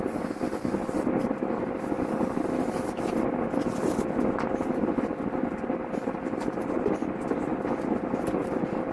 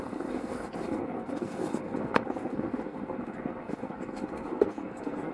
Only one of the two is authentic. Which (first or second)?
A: first